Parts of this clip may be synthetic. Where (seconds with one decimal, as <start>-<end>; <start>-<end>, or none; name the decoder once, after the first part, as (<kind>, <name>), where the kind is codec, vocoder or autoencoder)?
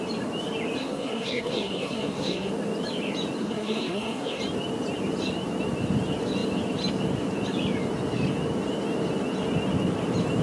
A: 0.8-2.5 (codec, SNAC); 3.4-4.4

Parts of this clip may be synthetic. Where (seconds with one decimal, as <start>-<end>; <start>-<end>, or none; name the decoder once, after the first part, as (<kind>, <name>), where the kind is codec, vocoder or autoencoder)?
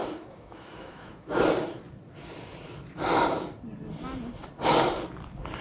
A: 0.0-1.5 (autoencoder, DAC-VAE)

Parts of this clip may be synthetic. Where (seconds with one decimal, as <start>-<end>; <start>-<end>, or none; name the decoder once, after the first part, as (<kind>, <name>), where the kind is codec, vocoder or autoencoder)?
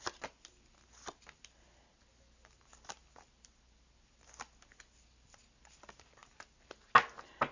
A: none